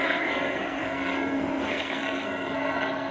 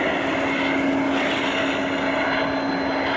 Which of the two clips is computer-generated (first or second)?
first